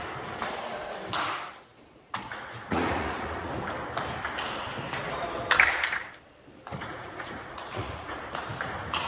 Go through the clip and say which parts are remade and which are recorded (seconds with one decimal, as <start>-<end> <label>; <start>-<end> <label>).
0.0-1.7 recorded; 1.7-3.5 remade; 3.5-6.7 recorded; 6.7-8.1 remade; 8.1-9.1 recorded